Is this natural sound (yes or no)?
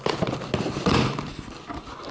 yes